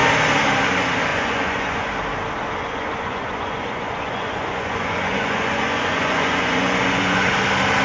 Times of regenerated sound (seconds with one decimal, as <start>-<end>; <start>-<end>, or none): 1.1-1.9; 2.6-7.3